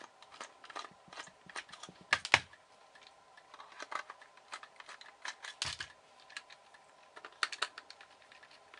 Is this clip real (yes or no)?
yes